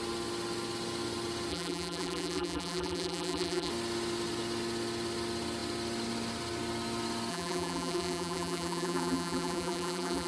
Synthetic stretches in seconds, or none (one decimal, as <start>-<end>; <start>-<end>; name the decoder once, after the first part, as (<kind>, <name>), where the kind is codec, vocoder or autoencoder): 1.5-3.7 (vocoder, BigVGAN v2); 7.3-10.3